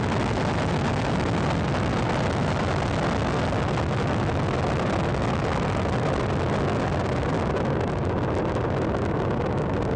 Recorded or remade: recorded